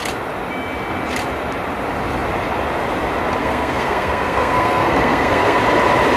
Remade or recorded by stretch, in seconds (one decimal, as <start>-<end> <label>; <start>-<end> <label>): 0.0-3.4 recorded; 3.4-5.6 remade; 5.6-6.2 recorded